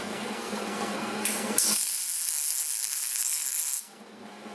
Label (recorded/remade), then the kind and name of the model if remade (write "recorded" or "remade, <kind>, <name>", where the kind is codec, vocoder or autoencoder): remade, codec, SNAC